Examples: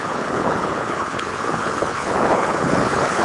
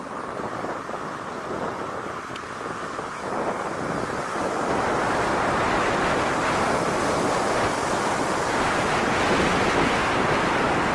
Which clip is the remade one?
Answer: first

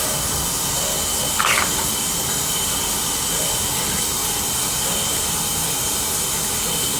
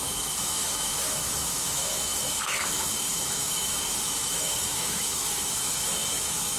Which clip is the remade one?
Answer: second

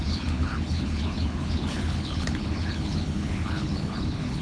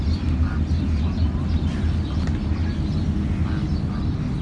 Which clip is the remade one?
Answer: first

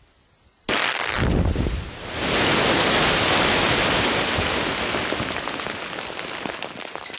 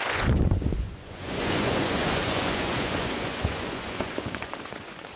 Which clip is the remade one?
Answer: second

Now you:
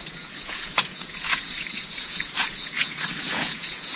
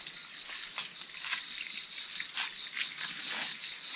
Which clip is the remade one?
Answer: first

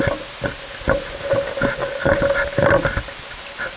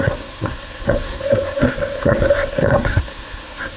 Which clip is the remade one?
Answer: second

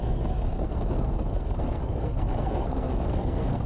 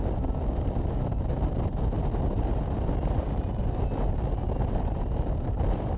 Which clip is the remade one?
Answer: first